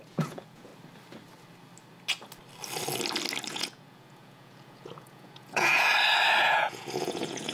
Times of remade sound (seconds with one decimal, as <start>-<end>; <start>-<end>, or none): 0.0-0.7; 3.5-5.9; 6.4-7.5